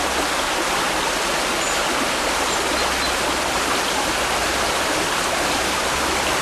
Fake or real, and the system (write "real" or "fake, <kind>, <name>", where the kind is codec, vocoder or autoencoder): real